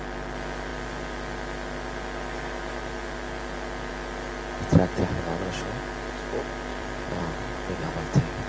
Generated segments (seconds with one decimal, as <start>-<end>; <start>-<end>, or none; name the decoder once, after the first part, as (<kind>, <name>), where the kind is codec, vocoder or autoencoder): 6.7-7.9 (vocoder, BigVGAN v2)